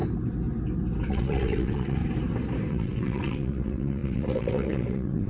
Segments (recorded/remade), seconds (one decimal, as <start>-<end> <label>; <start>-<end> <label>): 0.0-1.1 recorded; 1.1-2.0 remade; 2.0-2.7 recorded; 2.7-5.3 remade